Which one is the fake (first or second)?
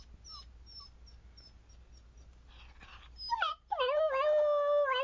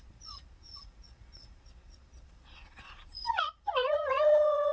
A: second